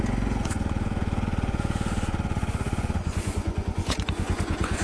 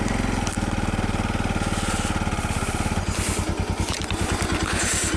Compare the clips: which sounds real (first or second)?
second